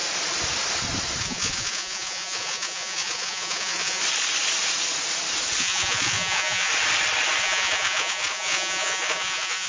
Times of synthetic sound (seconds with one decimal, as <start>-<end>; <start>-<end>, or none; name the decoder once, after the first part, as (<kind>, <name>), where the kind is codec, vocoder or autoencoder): 1.2-4.0 (vocoder, Vocos); 5.6-6.7; 7.4-9.7